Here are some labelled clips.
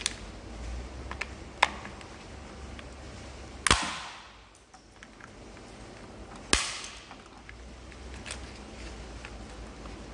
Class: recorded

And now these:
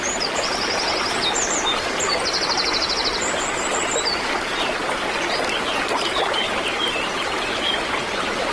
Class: recorded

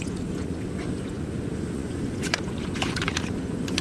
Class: remade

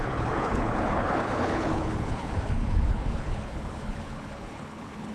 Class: remade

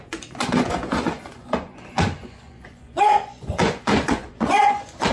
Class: remade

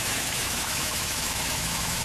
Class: remade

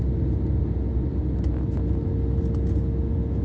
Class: recorded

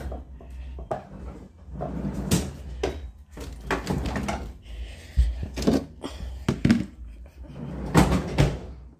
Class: recorded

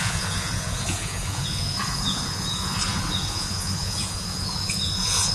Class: remade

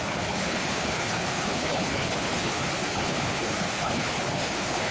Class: remade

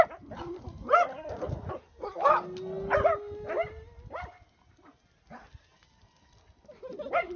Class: recorded